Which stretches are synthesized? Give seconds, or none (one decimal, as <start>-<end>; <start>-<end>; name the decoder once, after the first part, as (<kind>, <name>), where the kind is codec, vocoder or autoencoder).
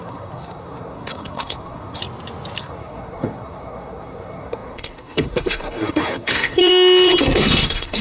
0.0-2.0 (codec, SNAC); 2.6-6.6; 7.2-8.0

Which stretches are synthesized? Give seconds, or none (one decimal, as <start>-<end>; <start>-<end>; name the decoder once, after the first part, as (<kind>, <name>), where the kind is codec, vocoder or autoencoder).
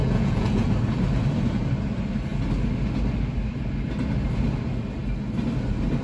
0.0-0.7 (vocoder, Vocos)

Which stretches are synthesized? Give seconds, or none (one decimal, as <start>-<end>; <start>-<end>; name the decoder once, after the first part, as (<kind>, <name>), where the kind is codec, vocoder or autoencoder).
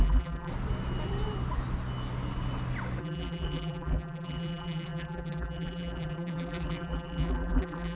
0.0-0.5 (vocoder, BigVGAN v2); 3.0-7.9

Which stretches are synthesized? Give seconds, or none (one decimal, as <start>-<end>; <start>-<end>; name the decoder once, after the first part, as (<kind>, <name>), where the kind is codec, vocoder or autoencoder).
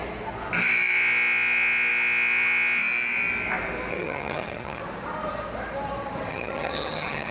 3.9-4.8 (vocoder, HiFi-GAN); 6.3-7.3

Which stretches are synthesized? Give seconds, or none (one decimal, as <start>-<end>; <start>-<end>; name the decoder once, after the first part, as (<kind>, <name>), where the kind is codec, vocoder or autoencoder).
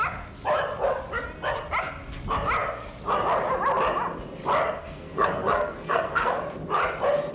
4.8-6.4 (codec, SNAC)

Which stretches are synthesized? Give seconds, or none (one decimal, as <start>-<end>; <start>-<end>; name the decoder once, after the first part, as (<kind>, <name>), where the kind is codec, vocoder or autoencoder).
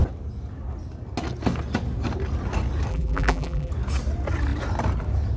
2.9-3.7 (vocoder, BigVGAN v2)